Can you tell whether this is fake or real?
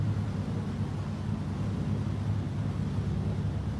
real